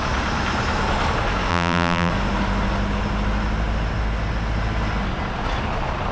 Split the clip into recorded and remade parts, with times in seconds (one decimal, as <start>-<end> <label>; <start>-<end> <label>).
0.0-1.5 recorded; 1.5-2.1 remade; 2.1-6.1 recorded